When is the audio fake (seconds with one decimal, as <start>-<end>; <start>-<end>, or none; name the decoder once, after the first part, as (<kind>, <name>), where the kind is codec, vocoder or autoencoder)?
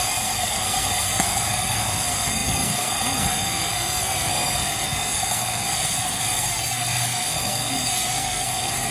0.0-8.9 (codec, SNAC)